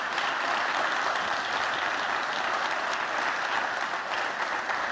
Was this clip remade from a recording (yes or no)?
no